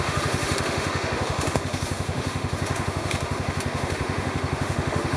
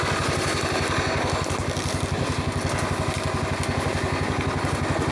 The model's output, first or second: first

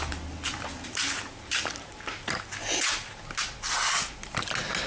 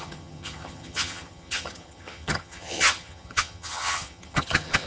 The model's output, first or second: second